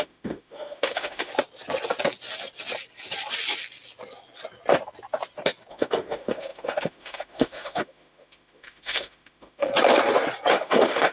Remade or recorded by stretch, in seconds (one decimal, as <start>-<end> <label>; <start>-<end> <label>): 0.0-1.3 remade; 1.3-5.7 recorded; 5.7-9.7 remade; 9.7-10.5 recorded; 10.5-11.1 remade